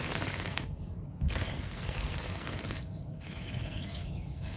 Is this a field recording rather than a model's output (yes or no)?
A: no